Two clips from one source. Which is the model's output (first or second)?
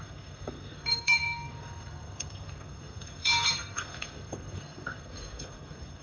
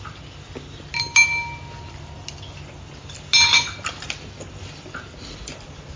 first